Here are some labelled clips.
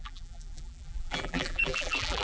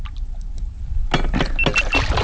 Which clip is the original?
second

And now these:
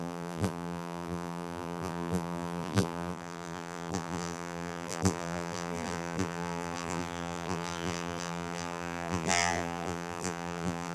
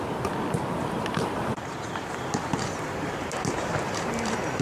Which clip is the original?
second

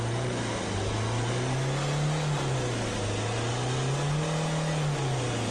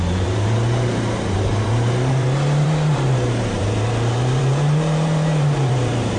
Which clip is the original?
first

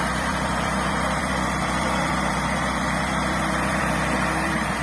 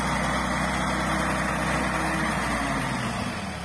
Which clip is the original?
second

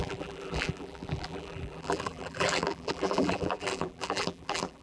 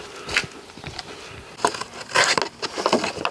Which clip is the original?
second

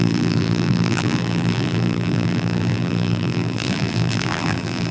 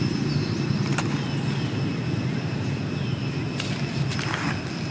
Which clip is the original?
second